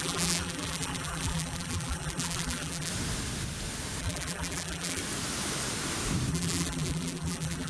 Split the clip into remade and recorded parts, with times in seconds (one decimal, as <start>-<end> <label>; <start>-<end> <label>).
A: 0.0-2.9 remade; 2.9-4.0 recorded; 4.0-5.0 remade; 5.0-6.3 recorded; 6.3-7.7 remade